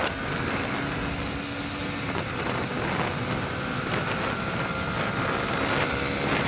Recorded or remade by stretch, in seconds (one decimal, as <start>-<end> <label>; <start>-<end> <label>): 0.0-6.5 recorded